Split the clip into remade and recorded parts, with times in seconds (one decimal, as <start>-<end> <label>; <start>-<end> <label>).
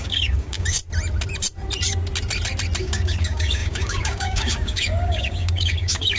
0.0-0.8 remade; 0.8-2.8 recorded; 2.8-6.2 remade